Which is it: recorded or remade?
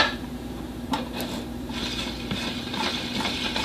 remade